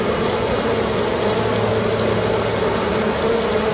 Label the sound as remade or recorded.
recorded